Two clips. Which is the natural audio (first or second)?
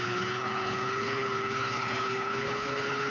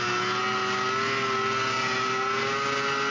second